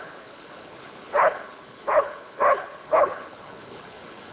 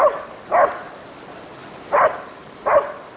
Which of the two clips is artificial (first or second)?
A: first